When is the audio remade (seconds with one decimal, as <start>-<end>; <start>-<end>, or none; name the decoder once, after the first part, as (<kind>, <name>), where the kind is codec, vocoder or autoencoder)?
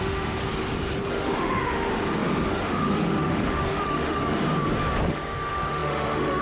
0.0-0.4 (autoencoder, DAC-VAE); 1.1-1.9; 2.5-4.2; 5.1-6.4